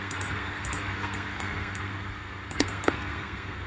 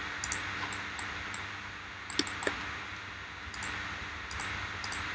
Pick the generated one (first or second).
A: first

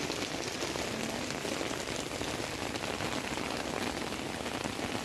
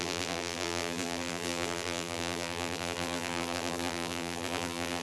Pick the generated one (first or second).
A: second